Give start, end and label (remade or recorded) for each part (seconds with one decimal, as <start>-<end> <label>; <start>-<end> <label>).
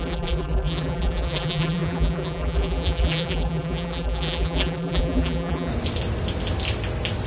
0.0-5.7 remade; 5.7-7.3 recorded